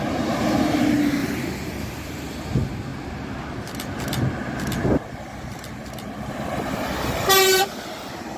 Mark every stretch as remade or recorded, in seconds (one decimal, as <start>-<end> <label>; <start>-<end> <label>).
0.0-1.2 recorded; 1.2-2.4 remade; 2.4-8.4 recorded